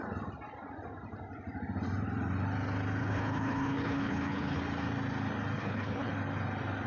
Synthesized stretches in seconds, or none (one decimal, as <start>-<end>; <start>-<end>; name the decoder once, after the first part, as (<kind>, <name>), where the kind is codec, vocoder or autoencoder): 3.0-4.6 (codec, HILCodec); 5.6-6.1